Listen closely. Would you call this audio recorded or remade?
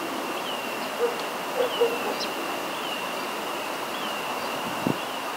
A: recorded